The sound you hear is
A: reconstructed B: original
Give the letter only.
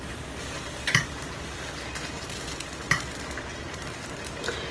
B